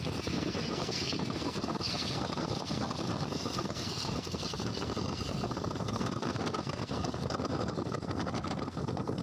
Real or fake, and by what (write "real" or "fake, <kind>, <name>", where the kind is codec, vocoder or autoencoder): fake, codec, SNAC